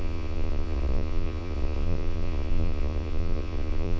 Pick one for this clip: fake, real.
fake